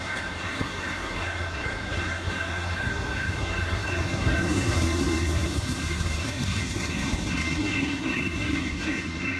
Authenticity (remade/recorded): remade